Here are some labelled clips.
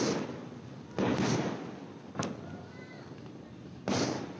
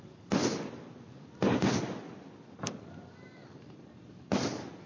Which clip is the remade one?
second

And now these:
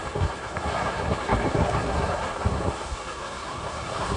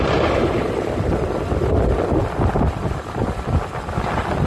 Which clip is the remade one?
first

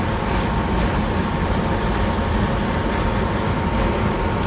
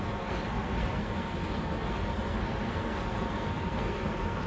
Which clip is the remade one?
second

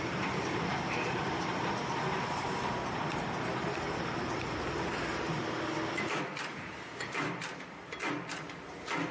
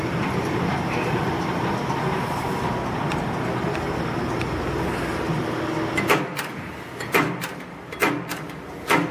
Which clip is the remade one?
first